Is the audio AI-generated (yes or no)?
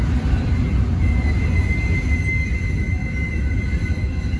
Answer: no